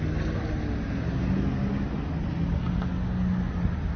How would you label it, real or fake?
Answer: real